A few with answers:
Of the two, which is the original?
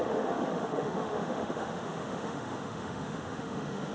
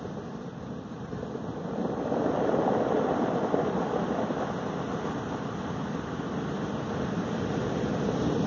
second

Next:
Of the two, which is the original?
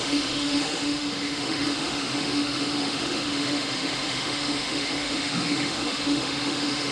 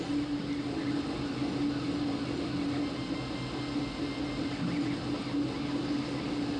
second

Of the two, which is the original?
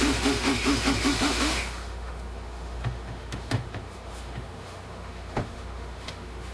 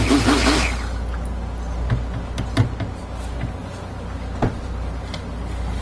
second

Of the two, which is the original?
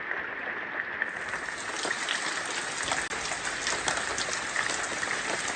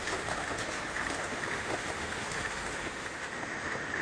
first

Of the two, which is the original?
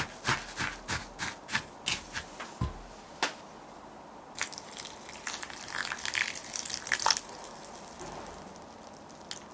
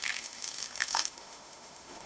first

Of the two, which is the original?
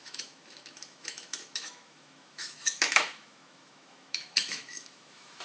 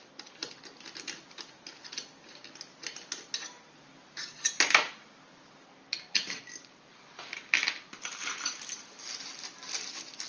second